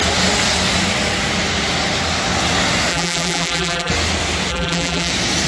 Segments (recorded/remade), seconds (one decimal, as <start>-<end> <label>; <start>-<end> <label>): 0.0-2.9 recorded; 2.9-3.9 remade; 3.9-4.5 recorded; 4.5-5.1 remade; 5.1-5.5 recorded